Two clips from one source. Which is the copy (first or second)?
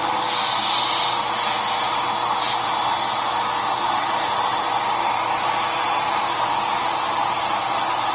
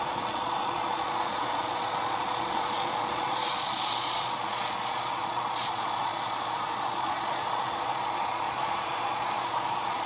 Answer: second